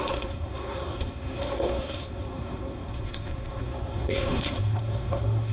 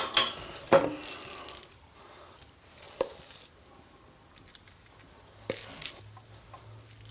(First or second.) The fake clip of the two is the first